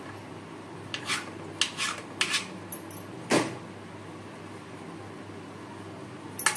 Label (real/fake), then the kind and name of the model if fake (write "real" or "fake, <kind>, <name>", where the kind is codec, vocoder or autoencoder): real